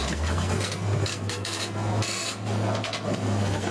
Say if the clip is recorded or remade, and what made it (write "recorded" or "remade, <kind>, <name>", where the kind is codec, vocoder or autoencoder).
remade, codec, SNAC